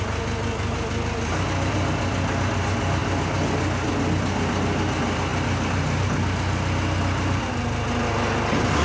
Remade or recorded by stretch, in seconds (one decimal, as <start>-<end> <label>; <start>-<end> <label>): 0.0-8.8 recorded